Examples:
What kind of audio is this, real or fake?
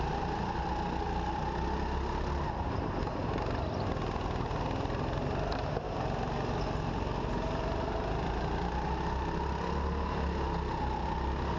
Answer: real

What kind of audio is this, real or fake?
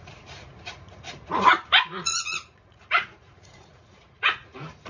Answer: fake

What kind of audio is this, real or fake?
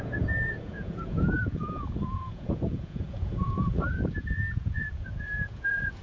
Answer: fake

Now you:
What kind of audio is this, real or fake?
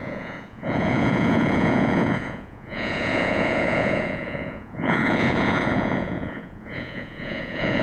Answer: fake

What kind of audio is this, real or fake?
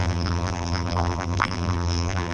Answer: fake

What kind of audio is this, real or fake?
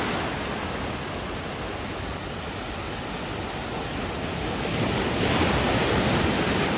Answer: real